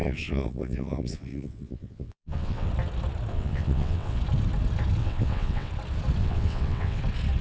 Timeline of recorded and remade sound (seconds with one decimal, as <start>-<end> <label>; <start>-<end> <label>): 0.0-2.7 remade; 2.7-3.3 recorded; 3.3-4.2 remade; 4.2-5.0 recorded; 5.0-5.7 remade; 5.7-6.2 recorded; 6.2-7.0 remade; 7.0-7.4 recorded